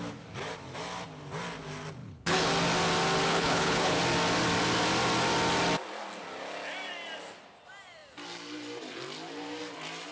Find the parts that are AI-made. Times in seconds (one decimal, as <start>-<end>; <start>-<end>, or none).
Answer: 2.0-2.5; 3.3-4.0